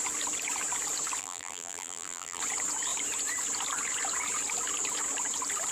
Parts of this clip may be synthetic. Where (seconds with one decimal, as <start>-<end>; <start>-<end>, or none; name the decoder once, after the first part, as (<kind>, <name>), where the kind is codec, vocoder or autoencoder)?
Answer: 1.2-2.4 (vocoder, BigVGAN v2)